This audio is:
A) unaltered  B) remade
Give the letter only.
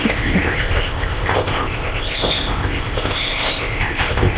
B